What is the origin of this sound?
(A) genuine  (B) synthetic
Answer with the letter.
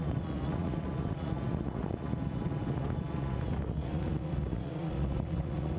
B